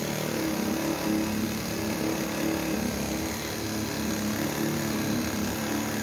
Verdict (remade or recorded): recorded